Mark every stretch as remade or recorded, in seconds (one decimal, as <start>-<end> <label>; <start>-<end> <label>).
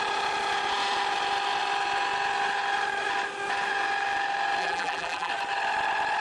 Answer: 0.0-4.6 recorded; 4.6-5.3 remade; 5.3-6.2 recorded